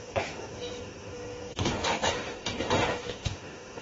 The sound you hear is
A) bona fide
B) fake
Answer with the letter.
B